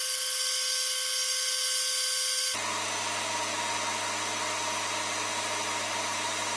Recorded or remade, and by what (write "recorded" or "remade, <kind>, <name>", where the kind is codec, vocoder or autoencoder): recorded